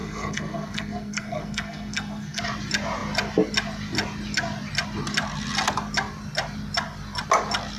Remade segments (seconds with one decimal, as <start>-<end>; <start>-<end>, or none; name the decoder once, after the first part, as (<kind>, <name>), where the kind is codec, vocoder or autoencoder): 0.0-2.4 (codec, SNAC)